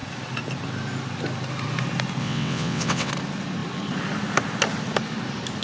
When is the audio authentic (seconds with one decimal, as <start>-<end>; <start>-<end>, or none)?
0.0-2.2; 3.1-5.6